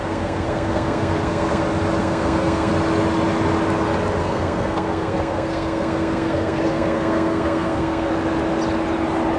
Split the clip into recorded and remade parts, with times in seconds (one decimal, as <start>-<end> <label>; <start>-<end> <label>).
0.0-1.6 remade; 1.6-2.0 recorded; 2.0-2.7 remade; 2.7-4.2 recorded; 4.2-8.1 remade; 8.1-9.4 recorded